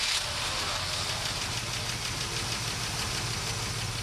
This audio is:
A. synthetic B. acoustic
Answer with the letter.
B